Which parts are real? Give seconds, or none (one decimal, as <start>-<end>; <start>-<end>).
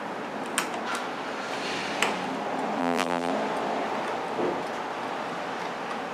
0.0-2.8; 3.3-6.1